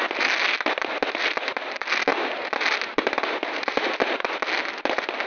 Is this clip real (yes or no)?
yes